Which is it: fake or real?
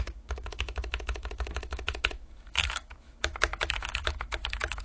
fake